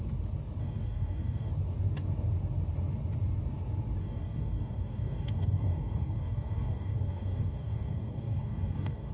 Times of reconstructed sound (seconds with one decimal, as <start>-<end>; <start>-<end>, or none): 0.6-1.5; 4.0-9.1